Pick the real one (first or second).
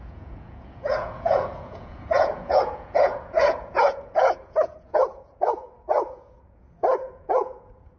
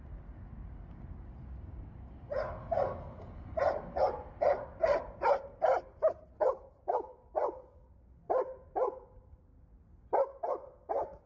second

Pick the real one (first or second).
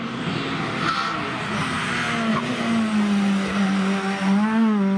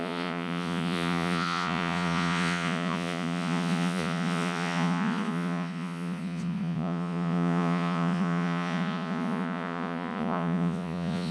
first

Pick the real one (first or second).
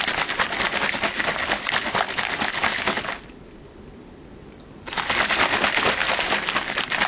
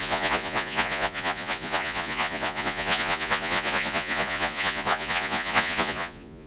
first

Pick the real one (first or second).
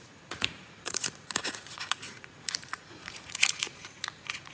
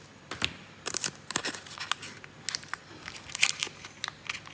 second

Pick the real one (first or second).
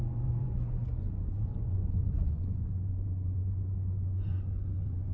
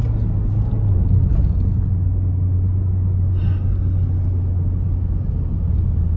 second